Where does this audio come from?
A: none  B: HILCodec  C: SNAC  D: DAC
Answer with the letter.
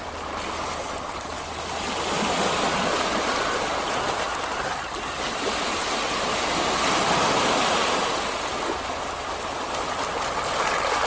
A